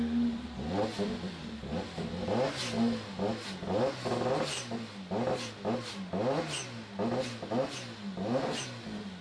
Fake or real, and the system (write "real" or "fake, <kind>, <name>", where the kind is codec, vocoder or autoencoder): real